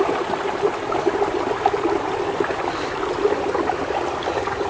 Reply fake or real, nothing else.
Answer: real